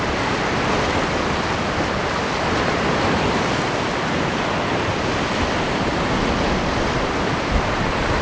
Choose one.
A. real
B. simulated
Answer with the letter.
B